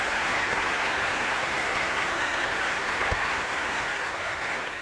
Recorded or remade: remade